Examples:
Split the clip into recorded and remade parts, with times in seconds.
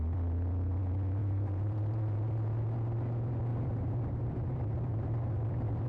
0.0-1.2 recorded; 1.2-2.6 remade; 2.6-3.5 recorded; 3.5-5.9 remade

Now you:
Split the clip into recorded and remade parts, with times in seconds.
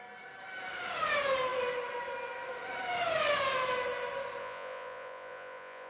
0.0-4.4 recorded; 4.4-5.9 remade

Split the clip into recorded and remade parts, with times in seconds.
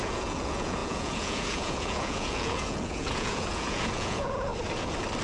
0.0-4.5 remade; 4.5-5.2 recorded